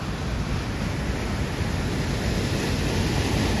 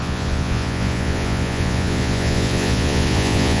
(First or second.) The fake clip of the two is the second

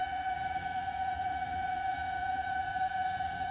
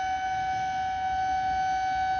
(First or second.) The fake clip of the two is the first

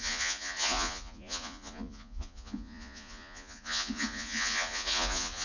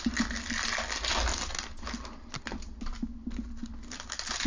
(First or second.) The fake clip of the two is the first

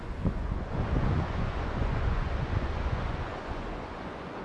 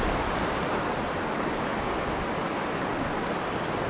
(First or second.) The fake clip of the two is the first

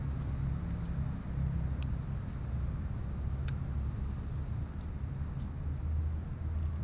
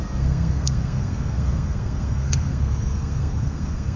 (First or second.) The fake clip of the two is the second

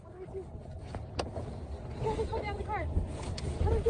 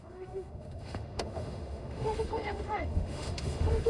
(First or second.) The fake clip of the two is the second